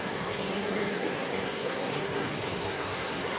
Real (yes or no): no